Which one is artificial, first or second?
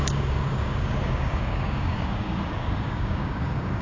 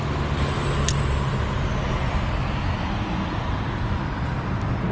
first